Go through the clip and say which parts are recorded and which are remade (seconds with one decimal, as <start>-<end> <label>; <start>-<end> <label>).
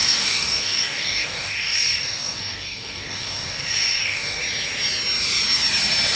0.0-4.4 remade; 4.4-6.2 recorded